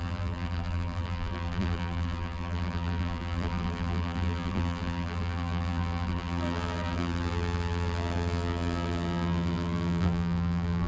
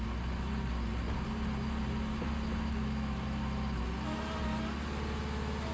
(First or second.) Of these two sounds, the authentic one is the second